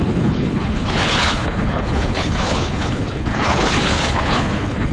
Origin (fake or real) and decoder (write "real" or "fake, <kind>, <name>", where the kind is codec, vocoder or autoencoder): fake, codec, HILCodec